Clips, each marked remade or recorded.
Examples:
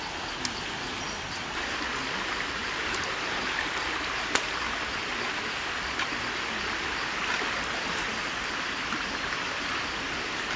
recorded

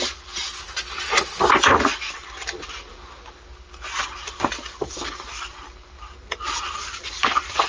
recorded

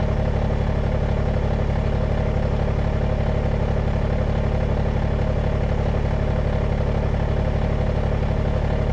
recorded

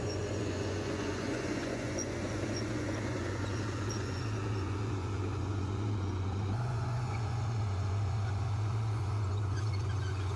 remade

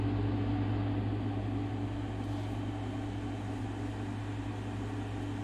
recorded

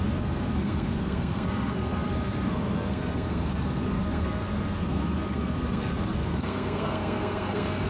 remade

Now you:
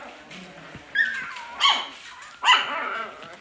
recorded